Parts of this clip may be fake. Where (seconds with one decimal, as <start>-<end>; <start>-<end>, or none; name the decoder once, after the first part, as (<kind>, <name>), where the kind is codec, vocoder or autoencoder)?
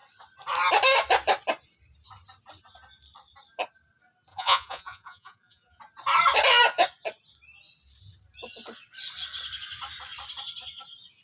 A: 4.3-5.8 (vocoder, Vocos)